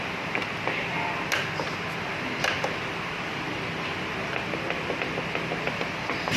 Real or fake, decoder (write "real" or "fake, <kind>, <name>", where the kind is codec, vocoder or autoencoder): real